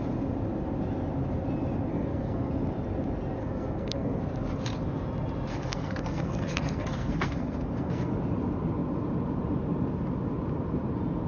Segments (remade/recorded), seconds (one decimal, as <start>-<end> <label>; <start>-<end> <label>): 0.0-1.9 recorded; 1.9-2.5 remade; 2.5-3.4 recorded; 3.4-4.2 remade; 4.2-5.5 recorded; 5.5-8.1 remade; 8.1-11.3 recorded